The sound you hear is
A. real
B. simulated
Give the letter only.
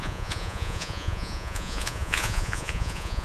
B